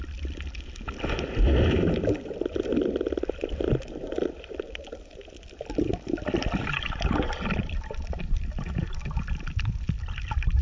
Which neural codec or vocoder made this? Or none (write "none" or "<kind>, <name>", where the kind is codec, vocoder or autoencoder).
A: none